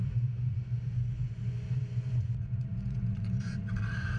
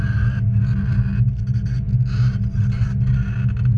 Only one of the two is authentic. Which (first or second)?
second